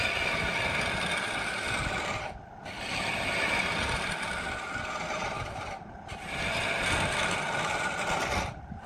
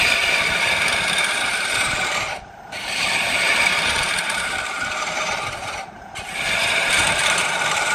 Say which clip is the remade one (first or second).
second